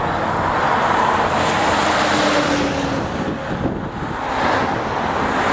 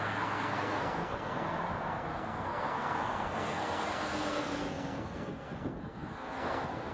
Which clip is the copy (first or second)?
second